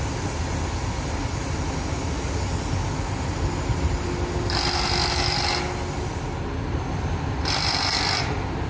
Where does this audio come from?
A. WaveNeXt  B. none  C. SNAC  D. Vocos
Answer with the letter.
B